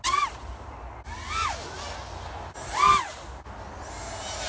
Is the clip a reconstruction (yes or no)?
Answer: no